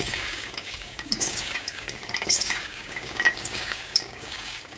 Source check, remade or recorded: remade